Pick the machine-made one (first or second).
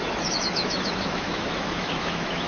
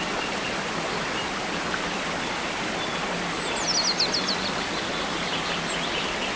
first